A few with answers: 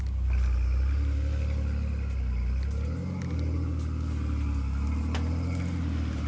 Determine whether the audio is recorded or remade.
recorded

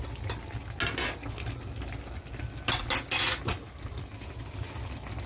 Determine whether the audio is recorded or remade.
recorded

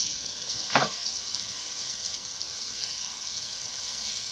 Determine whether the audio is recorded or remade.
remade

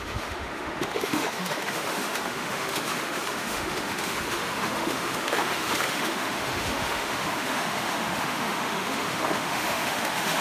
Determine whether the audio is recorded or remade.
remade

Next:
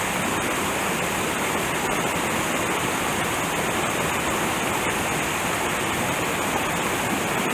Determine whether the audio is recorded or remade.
recorded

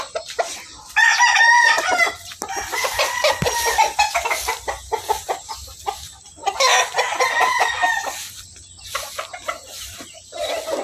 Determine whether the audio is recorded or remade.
recorded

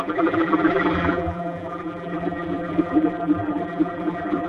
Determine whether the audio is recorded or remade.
remade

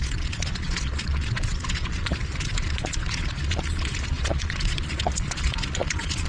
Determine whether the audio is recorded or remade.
remade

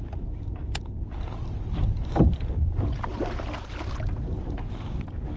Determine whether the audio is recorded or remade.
recorded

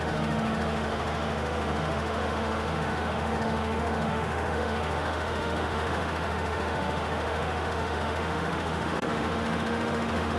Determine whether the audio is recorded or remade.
remade